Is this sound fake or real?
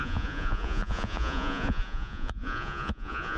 fake